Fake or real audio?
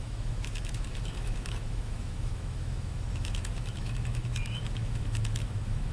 fake